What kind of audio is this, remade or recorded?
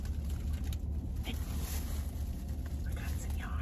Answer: recorded